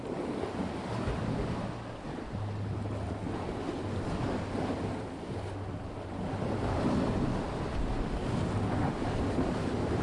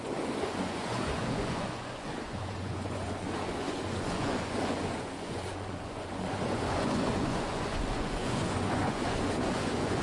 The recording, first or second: first